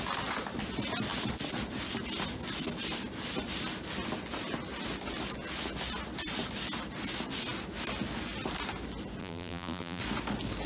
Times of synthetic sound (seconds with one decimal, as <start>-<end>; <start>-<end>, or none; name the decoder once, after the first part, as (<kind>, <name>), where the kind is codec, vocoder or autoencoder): 9.2-10.0 (vocoder, BigVGAN v2)